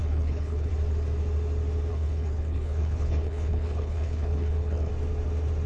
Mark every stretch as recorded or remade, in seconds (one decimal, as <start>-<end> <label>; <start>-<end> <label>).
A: 0.0-0.7 remade; 0.7-1.9 recorded; 1.9-4.9 remade; 4.9-5.7 recorded